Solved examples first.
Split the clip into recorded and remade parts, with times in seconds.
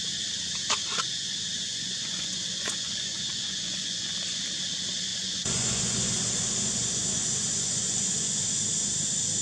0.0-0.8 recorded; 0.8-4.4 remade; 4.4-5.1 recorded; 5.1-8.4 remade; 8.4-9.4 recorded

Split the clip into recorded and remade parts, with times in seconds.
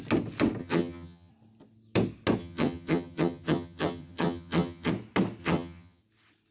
0.0-0.6 recorded; 0.6-1.3 remade; 1.3-2.4 recorded; 2.4-4.9 remade; 4.9-5.4 recorded; 5.4-6.0 remade; 6.0-6.5 recorded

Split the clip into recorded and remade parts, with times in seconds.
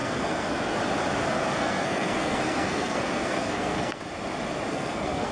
0.0-0.8 remade; 0.8-1.3 recorded; 1.3-4.0 remade; 4.0-4.7 recorded; 4.7-5.3 remade